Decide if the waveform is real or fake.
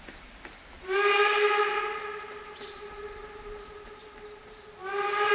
real